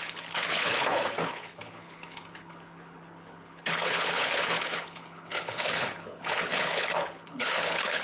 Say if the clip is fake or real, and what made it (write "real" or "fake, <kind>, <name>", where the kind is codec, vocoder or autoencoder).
fake, codec, HILCodec